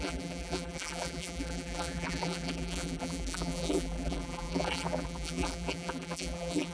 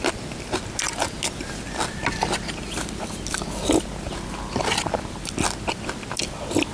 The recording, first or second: second